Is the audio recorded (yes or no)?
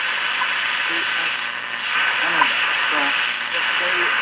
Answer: yes